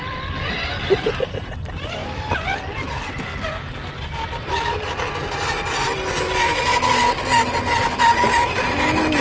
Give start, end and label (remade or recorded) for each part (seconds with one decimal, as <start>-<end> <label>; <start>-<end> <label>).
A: 0.0-9.2 recorded